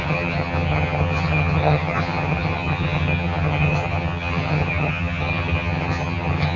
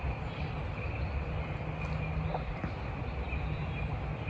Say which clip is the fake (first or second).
first